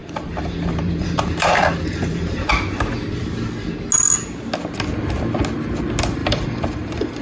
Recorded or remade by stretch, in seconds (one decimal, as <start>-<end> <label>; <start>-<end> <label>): 0.0-2.5 remade; 2.5-6.2 recorded; 6.2-7.2 remade